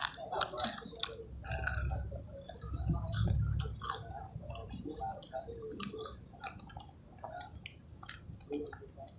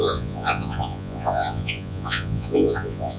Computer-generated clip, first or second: second